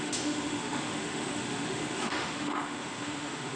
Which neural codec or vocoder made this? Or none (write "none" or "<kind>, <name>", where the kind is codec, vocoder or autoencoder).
autoencoder, DAC-VAE